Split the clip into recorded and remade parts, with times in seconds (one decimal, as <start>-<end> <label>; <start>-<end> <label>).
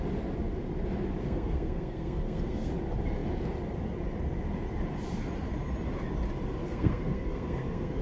0.0-1.2 recorded; 1.2-2.7 remade; 2.7-6.6 recorded; 6.6-8.0 remade